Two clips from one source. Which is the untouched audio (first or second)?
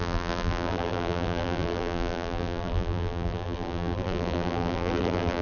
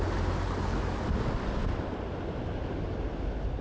second